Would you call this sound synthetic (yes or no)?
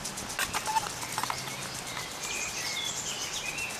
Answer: no